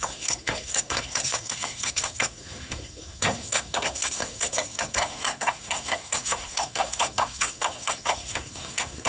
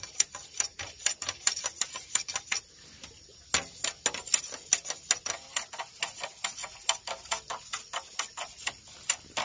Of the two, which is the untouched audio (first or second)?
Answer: second